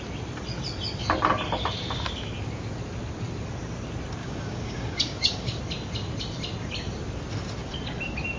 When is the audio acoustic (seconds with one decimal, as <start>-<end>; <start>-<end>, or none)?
0.0-4.2; 5.6-8.4